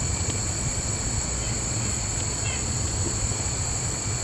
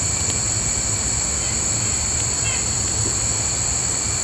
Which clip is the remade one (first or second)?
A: first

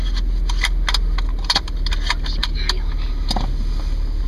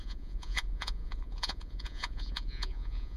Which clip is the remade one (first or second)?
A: second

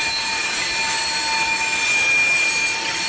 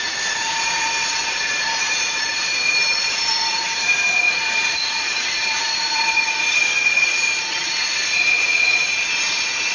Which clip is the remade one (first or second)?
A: second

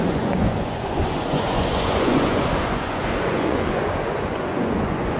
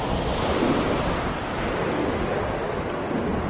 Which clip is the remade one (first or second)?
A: first